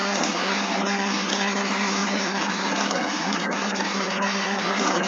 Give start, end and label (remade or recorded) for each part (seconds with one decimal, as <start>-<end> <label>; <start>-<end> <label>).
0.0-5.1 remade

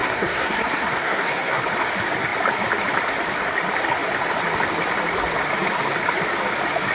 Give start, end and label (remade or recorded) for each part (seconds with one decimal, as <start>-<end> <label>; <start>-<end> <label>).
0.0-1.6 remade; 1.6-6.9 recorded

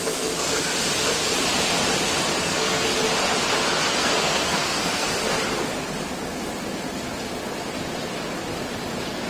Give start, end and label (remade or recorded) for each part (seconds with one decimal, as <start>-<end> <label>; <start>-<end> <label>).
0.0-0.7 remade; 0.7-2.4 recorded; 2.4-2.9 remade; 2.9-3.9 recorded; 3.9-5.1 remade; 5.1-9.3 recorded

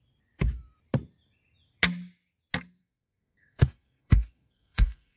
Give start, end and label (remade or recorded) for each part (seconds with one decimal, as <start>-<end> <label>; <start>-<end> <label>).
0.0-2.8 recorded; 2.8-5.2 remade

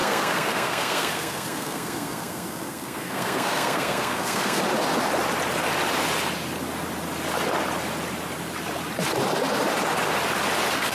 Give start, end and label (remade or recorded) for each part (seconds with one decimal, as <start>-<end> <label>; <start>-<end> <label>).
0.0-4.6 remade; 4.6-10.9 recorded

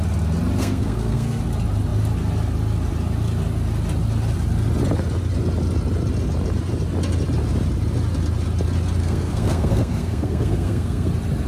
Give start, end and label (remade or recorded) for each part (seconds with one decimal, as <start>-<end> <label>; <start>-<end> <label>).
0.0-0.6 recorded; 0.6-1.4 remade; 1.4-9.0 recorded; 9.0-11.1 remade; 11.1-11.5 recorded